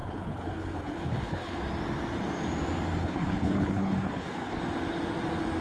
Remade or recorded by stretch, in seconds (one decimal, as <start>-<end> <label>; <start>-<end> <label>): 0.0-1.6 remade; 1.6-3.0 recorded; 3.0-4.6 remade; 4.6-5.6 recorded